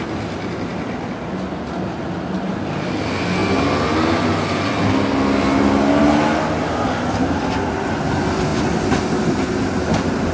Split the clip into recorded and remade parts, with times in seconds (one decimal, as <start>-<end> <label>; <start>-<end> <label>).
0.0-10.3 recorded